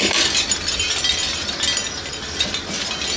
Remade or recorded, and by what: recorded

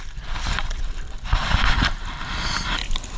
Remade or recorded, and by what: remade, vocoder, BigVGAN v2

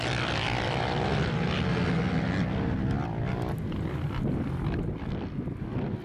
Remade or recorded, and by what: recorded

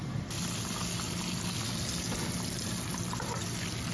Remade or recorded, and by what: recorded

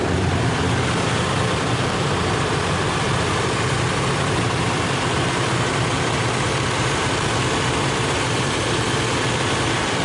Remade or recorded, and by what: remade, vocoder, BigVGAN v2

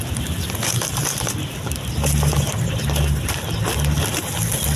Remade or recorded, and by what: recorded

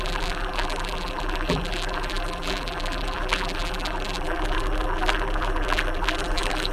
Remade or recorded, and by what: remade, vocoder, BigVGAN v2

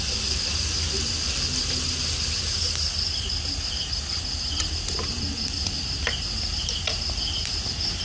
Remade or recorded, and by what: recorded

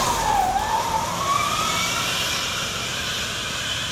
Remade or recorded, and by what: remade, vocoder, BigVGAN v2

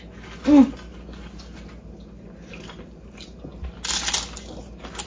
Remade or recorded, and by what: recorded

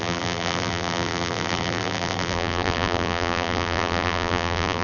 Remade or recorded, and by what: remade, vocoder, BigVGAN v2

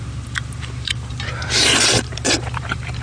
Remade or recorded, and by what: remade, vocoder, BigVGAN v2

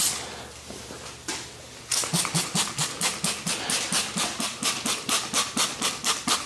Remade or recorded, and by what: recorded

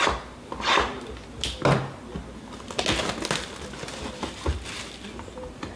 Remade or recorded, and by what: recorded